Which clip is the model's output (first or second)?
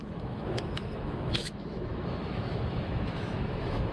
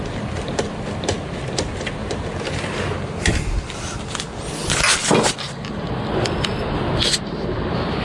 first